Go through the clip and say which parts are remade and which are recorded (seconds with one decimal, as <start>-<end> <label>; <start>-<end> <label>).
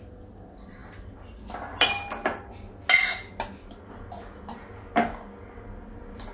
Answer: 0.0-6.3 recorded